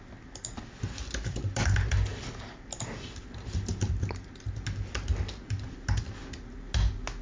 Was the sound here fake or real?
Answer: real